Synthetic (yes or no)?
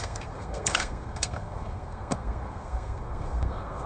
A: yes